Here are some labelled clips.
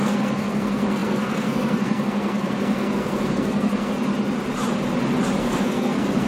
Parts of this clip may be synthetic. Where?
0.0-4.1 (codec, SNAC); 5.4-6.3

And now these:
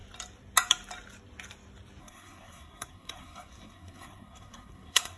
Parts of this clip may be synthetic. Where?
2.0-5.2 (codec, SNAC)

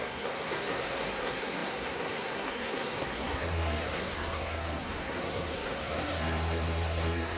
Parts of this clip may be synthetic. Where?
0.0-7.4 (codec, SNAC)

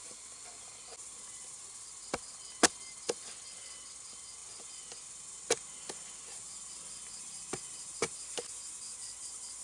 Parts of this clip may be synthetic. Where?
none

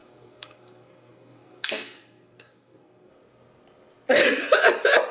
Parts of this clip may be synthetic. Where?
0.0-3.1 (codec, SNAC)